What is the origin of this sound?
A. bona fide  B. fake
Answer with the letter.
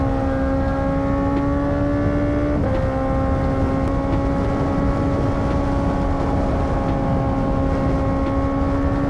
A